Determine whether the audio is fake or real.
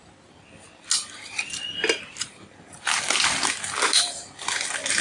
real